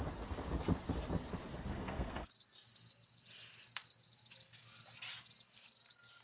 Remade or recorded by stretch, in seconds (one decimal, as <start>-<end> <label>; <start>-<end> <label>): 0.0-1.7 recorded; 1.7-2.3 remade; 2.3-6.2 recorded

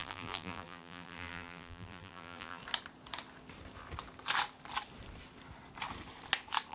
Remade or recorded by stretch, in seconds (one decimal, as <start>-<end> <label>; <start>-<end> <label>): 0.0-2.6 remade; 2.6-6.7 recorded

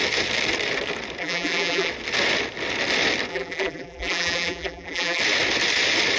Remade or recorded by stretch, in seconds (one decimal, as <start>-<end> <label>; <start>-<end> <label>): 0.0-1.2 recorded; 1.2-1.9 remade; 1.9-3.3 recorded; 3.3-5.2 remade; 5.2-6.2 recorded

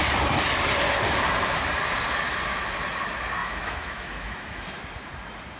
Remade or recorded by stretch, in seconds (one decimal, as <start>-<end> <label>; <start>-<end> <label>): 0.0-3.4 recorded; 3.4-4.8 remade; 4.8-5.6 recorded

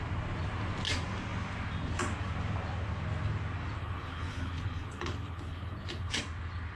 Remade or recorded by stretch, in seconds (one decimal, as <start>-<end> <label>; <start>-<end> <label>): 0.0-3.8 recorded; 3.8-6.2 remade; 6.2-6.8 recorded

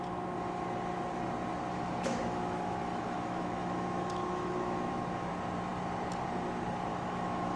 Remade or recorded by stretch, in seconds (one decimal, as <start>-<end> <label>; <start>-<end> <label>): 0.0-1.7 recorded; 1.7-5.3 remade; 5.3-6.9 recorded; 6.9-7.6 remade

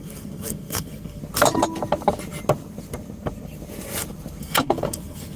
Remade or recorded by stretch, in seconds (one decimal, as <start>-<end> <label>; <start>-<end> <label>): 0.0-1.2 remade; 1.2-4.4 recorded; 4.4-5.4 remade